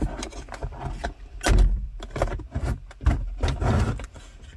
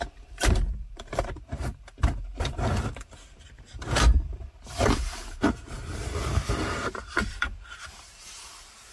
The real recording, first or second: first